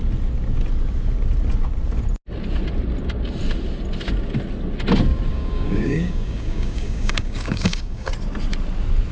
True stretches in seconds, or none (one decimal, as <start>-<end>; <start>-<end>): 0.0-5.3; 8.1-9.1